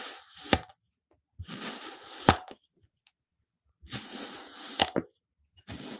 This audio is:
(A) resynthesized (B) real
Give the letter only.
B